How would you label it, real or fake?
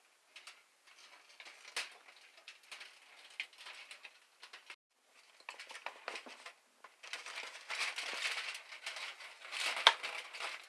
real